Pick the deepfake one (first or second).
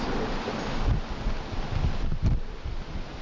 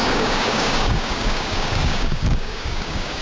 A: second